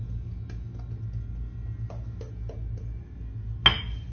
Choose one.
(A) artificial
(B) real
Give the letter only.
B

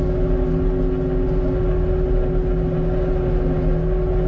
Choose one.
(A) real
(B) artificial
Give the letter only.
A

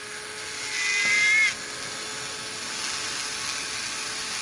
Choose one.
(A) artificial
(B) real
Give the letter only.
B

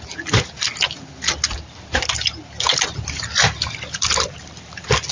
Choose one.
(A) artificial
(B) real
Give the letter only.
B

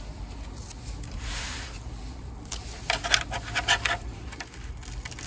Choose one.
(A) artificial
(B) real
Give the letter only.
B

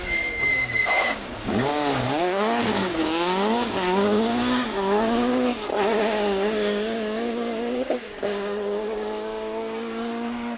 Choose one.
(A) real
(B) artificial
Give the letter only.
B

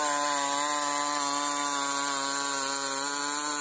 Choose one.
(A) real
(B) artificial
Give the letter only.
A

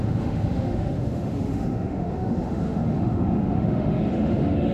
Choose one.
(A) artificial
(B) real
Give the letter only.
A